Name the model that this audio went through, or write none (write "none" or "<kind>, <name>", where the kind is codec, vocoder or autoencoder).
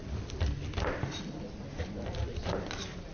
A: none